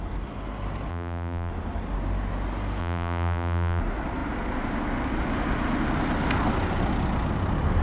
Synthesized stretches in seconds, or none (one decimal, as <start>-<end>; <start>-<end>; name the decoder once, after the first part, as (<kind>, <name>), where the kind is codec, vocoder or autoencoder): 0.9-1.5 (vocoder, BigVGAN v2); 2.8-3.8